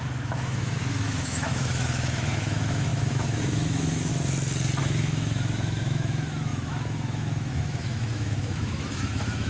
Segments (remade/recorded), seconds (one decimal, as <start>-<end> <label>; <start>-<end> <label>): 0.0-4.1 remade; 4.1-4.8 recorded; 4.8-9.5 remade